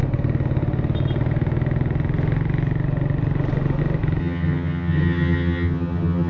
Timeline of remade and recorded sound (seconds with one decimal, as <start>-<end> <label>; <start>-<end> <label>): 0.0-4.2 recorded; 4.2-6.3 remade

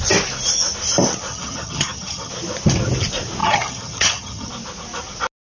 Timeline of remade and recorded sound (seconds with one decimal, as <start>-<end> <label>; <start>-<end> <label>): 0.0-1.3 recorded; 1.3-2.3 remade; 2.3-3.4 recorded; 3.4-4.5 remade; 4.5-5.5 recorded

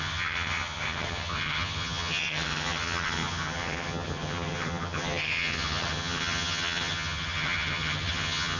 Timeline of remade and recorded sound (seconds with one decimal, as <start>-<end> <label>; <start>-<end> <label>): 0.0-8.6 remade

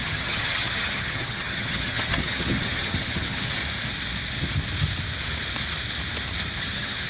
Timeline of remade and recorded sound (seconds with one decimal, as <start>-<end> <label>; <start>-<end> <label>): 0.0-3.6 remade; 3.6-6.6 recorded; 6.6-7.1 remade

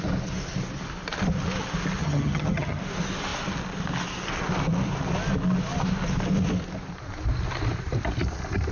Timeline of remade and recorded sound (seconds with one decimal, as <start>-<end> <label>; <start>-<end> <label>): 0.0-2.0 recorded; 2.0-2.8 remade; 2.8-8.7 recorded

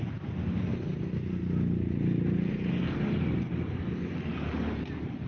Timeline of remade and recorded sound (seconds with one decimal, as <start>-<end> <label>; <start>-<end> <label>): 0.0-5.3 recorded